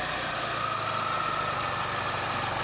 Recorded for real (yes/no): yes